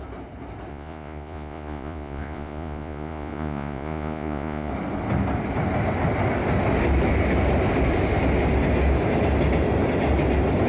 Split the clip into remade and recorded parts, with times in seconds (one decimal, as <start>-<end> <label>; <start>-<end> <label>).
0.0-0.7 recorded; 0.7-4.7 remade; 4.7-10.7 recorded